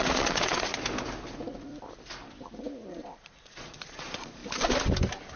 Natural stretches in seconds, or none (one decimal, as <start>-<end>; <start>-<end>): 0.7-2.9; 4.4-5.4